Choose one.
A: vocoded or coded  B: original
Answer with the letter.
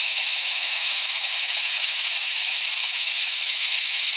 A